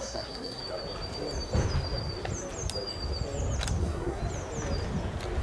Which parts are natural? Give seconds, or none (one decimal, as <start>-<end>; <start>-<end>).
0.6-3.8; 4.2-5.4